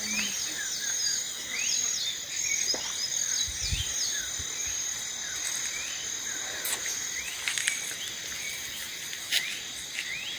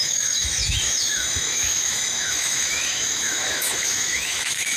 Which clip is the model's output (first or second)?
second